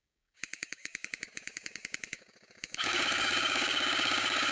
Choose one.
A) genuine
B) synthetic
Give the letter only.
B